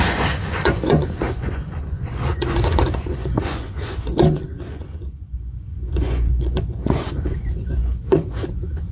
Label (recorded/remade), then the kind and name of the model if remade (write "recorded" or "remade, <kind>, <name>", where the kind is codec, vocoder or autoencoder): remade, vocoder, Vocos